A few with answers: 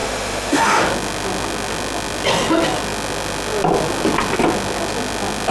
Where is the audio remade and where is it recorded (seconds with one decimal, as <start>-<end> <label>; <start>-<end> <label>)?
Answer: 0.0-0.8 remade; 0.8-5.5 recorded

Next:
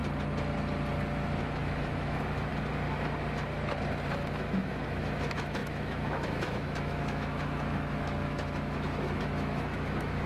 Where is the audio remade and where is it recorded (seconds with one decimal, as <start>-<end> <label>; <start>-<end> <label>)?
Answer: 0.0-1.4 recorded; 1.4-2.5 remade; 2.5-4.3 recorded; 4.3-10.3 remade

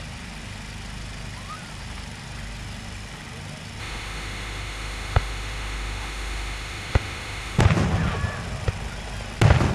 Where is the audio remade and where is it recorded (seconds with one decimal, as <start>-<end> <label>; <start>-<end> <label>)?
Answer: 0.0-3.8 recorded; 3.8-7.6 remade; 7.6-9.7 recorded